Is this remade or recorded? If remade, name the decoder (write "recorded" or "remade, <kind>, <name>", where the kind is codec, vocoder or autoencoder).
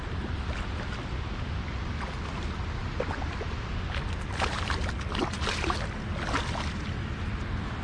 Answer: recorded